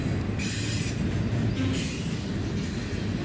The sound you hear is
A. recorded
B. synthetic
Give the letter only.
A